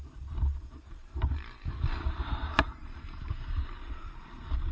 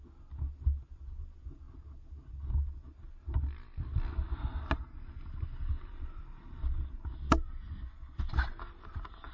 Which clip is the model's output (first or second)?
first